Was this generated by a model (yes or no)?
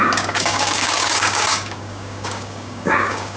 yes